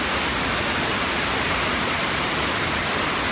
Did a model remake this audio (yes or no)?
no